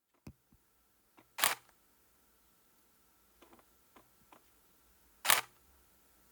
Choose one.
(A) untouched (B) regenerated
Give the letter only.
A